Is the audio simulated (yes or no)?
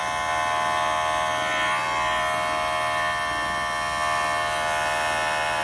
no